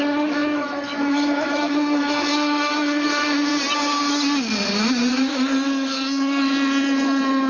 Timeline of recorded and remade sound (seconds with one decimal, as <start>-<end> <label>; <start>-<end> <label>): 0.0-3.5 remade; 3.5-5.1 recorded; 5.1-7.5 remade

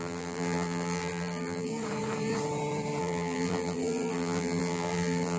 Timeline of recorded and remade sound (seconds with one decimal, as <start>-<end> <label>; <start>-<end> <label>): 0.0-1.7 remade; 1.7-3.0 recorded; 3.0-5.4 remade

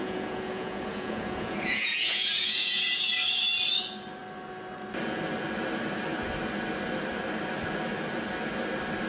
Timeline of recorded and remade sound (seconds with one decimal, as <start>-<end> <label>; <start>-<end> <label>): 0.0-3.1 remade; 3.1-9.1 recorded

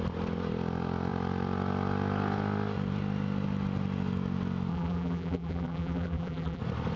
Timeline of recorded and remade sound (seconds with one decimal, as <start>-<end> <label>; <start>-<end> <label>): 0.0-4.7 recorded; 4.7-6.6 remade; 6.6-7.0 recorded